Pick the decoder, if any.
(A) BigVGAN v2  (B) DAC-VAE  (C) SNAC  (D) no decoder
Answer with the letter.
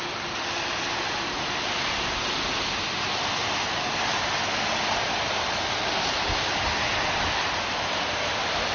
D